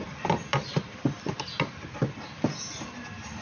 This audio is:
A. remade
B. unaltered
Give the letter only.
B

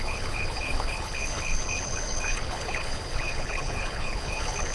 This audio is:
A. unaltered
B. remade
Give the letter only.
B